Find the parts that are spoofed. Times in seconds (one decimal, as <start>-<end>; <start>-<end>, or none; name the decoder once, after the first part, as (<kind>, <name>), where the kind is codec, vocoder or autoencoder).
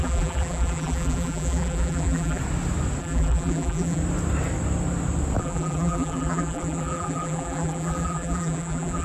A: 0.0-2.4 (vocoder, BigVGAN v2); 3.0-4.0; 5.4-9.0